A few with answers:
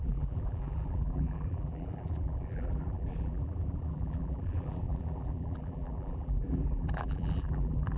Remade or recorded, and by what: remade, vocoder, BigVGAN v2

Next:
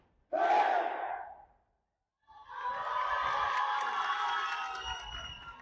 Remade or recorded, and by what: recorded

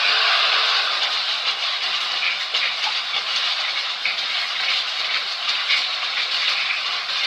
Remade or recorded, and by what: recorded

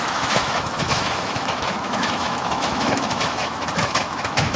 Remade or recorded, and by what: remade, autoencoder, DAC-VAE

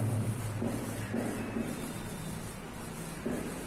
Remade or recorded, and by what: recorded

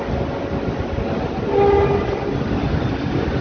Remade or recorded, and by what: recorded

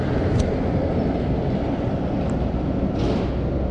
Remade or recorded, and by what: recorded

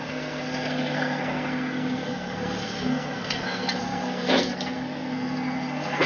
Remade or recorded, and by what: remade, codec, SNAC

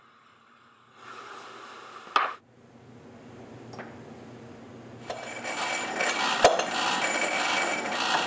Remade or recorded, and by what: recorded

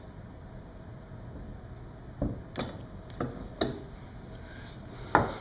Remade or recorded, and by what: recorded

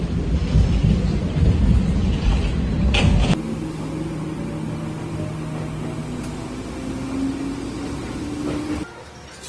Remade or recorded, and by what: recorded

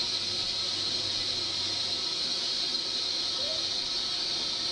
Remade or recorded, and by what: recorded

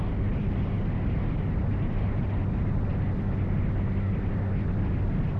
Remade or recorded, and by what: recorded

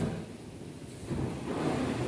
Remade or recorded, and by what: recorded